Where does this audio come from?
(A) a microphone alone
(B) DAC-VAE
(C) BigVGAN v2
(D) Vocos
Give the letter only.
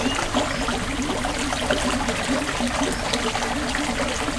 A